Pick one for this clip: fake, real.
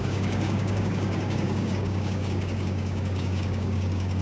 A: fake